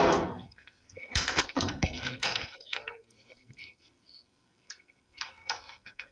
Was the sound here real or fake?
fake